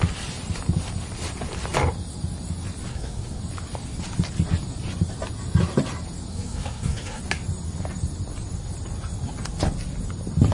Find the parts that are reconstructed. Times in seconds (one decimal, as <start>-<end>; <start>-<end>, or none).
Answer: 2.9-3.4; 6.3-7.2